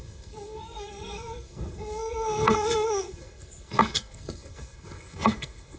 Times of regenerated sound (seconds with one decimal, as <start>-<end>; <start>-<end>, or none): 0.0-5.8